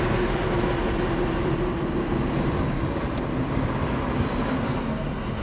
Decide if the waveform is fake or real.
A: real